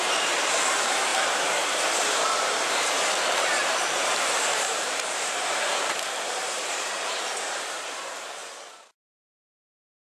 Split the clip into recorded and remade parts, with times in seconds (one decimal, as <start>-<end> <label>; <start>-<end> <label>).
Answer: 0.0-8.4 remade; 8.4-9.0 recorded; 9.0-10.2 remade